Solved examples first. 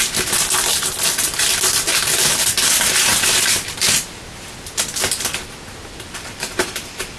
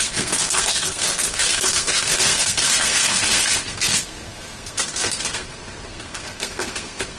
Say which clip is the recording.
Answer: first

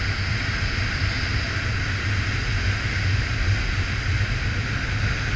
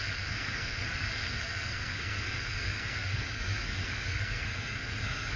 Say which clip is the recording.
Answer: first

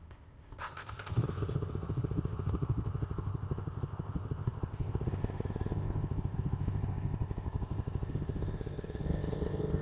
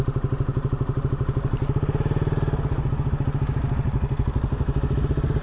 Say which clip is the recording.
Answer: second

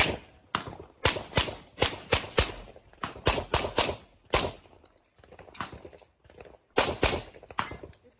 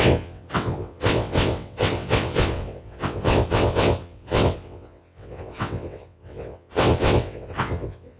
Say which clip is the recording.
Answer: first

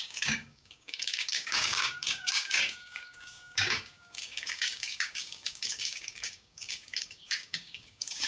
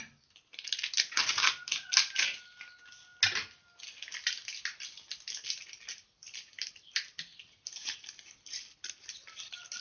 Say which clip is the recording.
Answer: second